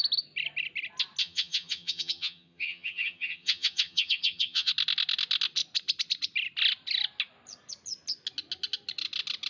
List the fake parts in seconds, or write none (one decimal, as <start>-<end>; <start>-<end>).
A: 1.2-4.7